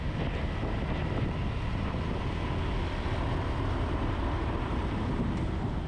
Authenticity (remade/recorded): recorded